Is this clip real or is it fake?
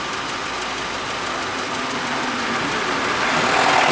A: real